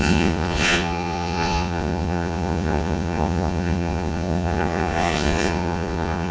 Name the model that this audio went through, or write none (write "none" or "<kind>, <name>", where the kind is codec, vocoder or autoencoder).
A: vocoder, Vocos